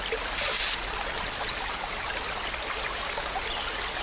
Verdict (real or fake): real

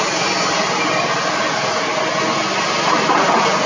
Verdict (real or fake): real